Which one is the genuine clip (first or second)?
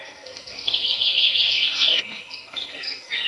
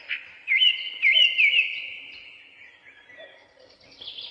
second